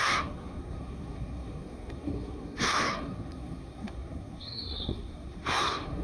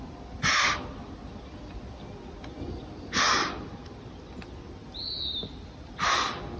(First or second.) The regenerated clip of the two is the first